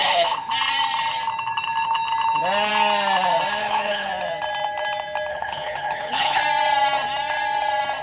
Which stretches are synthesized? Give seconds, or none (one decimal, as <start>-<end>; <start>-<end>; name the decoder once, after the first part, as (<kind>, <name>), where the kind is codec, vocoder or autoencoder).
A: 0.0-0.5 (codec, HILCodec); 3.6-4.1; 5.3-6.4